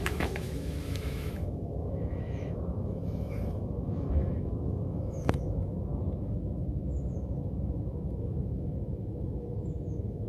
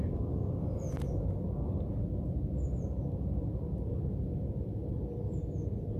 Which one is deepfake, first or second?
first